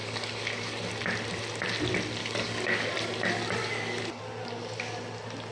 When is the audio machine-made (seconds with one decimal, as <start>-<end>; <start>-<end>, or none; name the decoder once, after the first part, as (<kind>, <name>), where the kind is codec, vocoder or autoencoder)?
0.0-0.8 (codec, DAC); 2.2-2.9; 3.6-4.2